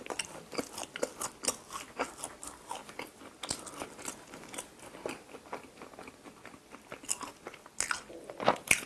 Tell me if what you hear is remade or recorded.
recorded